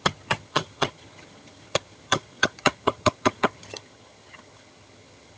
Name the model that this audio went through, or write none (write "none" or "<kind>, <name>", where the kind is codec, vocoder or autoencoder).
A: vocoder, HiFi-GAN